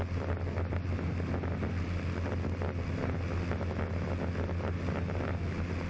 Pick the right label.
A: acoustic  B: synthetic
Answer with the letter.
A